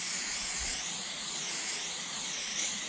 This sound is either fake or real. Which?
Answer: fake